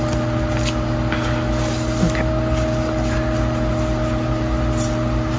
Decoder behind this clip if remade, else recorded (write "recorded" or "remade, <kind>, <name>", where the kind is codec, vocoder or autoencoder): recorded